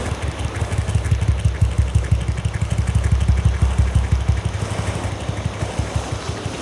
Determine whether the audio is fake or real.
real